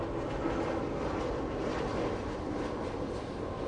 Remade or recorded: recorded